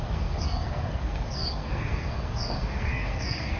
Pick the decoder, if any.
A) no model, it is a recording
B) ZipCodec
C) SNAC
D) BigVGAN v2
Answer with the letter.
C